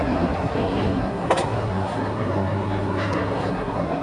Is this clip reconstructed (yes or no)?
yes